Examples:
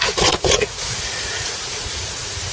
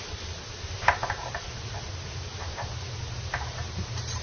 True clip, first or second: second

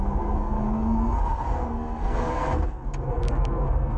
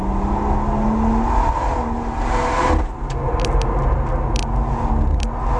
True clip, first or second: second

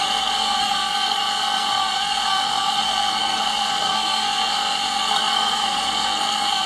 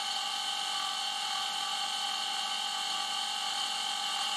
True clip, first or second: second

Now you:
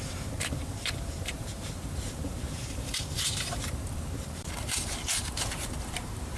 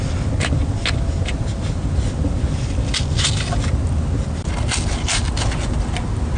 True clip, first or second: second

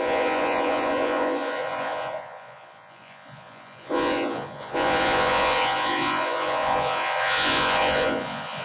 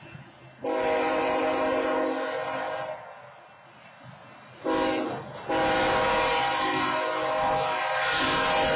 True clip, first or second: second